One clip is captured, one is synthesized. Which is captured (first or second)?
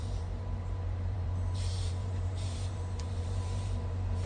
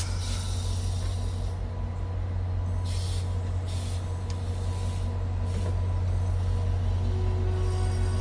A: second